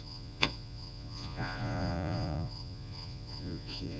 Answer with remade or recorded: remade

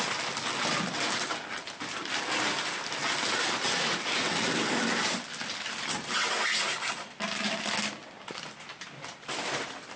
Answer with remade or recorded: recorded